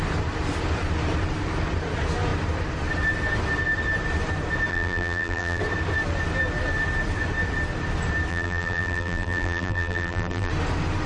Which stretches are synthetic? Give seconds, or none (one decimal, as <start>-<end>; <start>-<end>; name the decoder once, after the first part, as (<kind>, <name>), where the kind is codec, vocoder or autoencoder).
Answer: 4.7-5.6 (vocoder, BigVGAN v2); 8.3-10.5